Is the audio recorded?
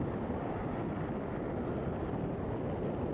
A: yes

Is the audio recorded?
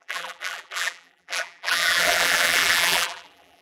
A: no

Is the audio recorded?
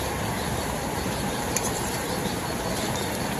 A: no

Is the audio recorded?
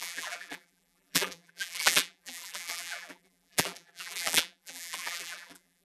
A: no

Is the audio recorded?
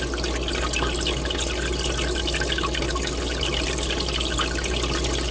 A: yes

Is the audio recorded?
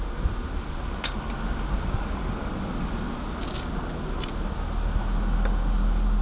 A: yes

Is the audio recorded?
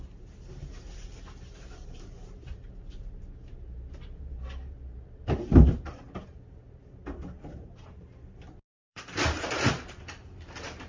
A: no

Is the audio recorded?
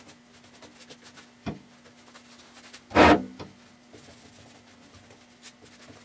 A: yes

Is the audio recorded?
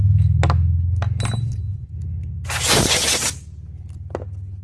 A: yes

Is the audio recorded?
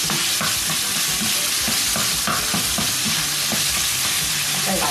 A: no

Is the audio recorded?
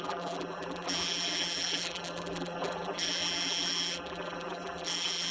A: no